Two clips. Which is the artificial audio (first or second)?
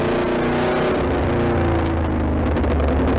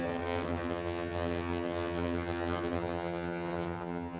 second